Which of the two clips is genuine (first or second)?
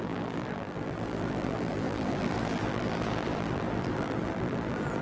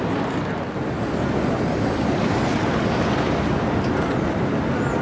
second